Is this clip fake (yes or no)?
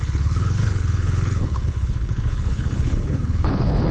yes